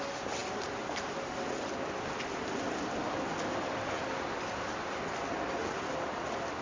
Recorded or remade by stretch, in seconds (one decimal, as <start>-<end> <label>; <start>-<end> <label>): 0.0-6.6 recorded